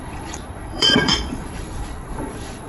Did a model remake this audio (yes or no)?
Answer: yes